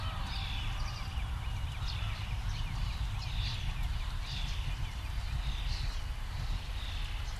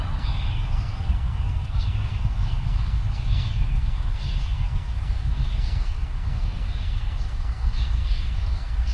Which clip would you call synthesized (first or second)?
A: second